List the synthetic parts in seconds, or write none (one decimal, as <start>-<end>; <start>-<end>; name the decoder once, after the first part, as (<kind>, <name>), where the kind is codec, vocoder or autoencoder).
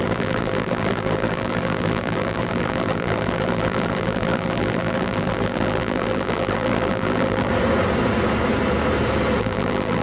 0.0-7.5 (vocoder, BigVGAN v2); 9.4-10.0